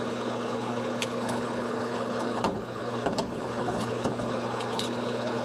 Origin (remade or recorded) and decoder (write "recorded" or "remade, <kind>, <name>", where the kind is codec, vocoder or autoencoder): remade, codec, HILCodec